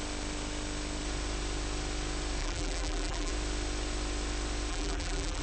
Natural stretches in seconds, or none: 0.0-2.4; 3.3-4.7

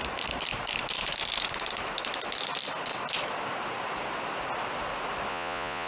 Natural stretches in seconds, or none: 0.0-5.3

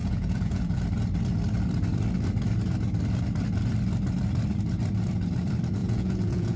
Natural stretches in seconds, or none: 0.8-5.8